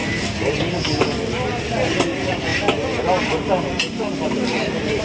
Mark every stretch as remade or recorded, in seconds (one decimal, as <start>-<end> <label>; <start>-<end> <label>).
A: 0.0-5.0 recorded